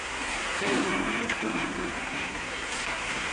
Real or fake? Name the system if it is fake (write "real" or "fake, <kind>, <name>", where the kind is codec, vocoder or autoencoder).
fake, codec, SNAC